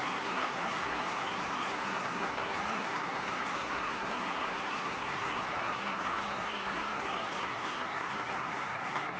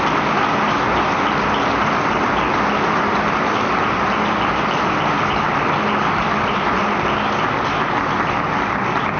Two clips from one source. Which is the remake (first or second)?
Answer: first